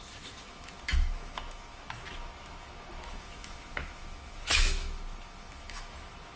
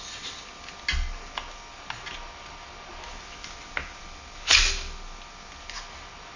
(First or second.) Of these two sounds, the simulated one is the first